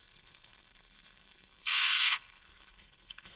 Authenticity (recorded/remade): remade